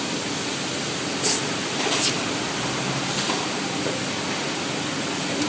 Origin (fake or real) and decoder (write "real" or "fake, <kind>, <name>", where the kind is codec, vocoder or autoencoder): real